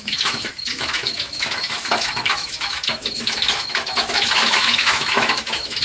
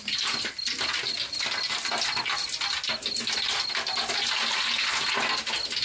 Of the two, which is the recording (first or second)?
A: second